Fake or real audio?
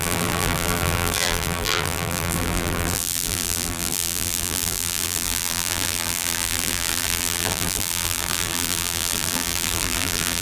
fake